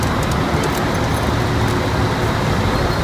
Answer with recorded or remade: recorded